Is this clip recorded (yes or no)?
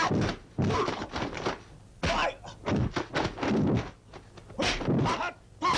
yes